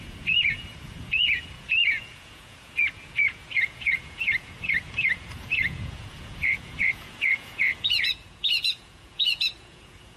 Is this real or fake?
fake